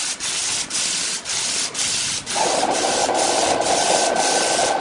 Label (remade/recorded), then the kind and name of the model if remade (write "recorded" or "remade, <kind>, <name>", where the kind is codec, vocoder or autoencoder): recorded